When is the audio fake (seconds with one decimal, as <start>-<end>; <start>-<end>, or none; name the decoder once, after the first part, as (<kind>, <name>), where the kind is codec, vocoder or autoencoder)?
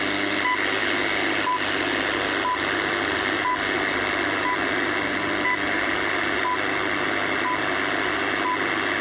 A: none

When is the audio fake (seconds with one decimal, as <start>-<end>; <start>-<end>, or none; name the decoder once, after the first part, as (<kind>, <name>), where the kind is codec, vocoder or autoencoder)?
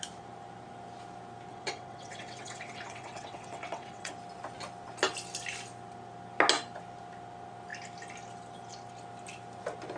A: 1.5-4.1 (vocoder, WaveNeXt)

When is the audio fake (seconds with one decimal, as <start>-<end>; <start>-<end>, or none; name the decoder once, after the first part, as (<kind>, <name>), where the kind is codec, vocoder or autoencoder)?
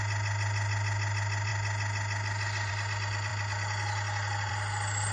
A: none